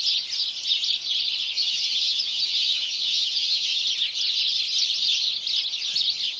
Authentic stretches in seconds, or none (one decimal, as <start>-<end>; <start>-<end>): 0.0-1.4; 3.8-6.4